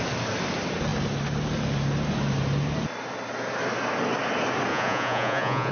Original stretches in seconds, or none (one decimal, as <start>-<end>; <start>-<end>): 0.0-4.7